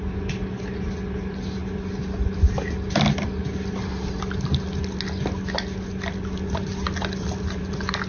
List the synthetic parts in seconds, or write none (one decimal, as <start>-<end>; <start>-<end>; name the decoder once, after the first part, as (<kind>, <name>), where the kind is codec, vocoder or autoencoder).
none